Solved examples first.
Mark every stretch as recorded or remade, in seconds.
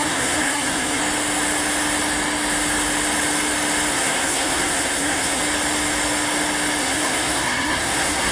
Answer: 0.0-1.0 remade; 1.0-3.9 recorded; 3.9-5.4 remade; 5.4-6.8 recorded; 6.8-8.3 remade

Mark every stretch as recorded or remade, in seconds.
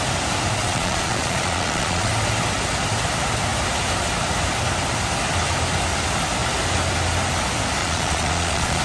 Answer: 0.0-0.6 recorded; 0.6-2.1 remade; 2.1-7.8 recorded; 7.8-8.8 remade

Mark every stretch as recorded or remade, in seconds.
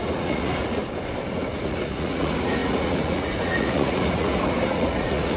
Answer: 0.0-0.8 remade; 0.8-1.3 recorded; 1.3-5.4 remade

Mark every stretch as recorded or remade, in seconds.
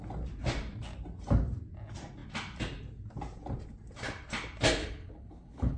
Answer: 0.0-4.8 recorded; 4.8-5.8 remade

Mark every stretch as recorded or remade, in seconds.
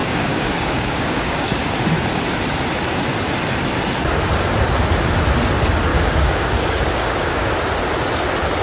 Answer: 0.0-1.8 remade; 1.8-5.9 recorded; 5.9-7.5 remade; 7.5-8.6 recorded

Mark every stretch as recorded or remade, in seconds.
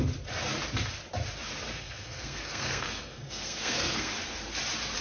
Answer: 0.0-1.7 recorded; 1.7-4.1 remade; 4.1-5.0 recorded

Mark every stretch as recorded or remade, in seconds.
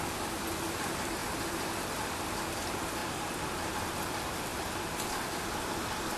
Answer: 0.0-3.0 remade; 3.0-3.7 recorded; 3.7-6.2 remade